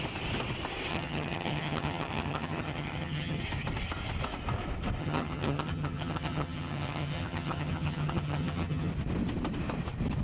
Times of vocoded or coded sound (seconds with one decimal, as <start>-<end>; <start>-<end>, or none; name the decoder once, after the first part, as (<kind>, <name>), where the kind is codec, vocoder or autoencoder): 0.9-3.4 (vocoder, HiFi-GAN); 5.0-8.9